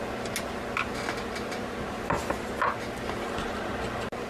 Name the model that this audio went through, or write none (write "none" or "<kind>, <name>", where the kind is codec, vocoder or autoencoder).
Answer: none